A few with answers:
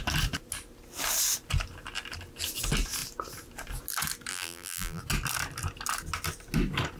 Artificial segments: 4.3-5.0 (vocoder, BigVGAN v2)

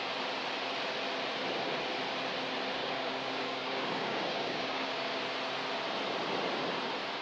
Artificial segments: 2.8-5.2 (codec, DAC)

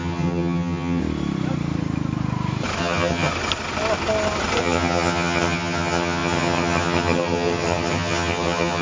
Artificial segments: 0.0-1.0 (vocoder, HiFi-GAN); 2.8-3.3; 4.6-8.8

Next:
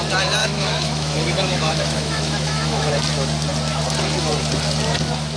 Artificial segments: 0.4-2.9 (autoencoder, DAC-VAE)

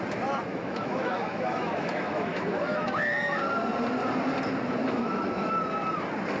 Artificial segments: 0.5-2.9 (autoencoder, DAC-VAE); 4.8-5.5

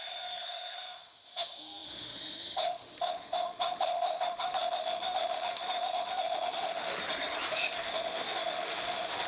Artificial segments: 0.0-7.0 (autoencoder, DAC-VAE); 7.5-9.3